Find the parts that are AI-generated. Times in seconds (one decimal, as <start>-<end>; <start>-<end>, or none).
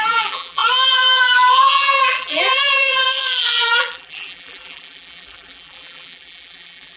0.0-7.0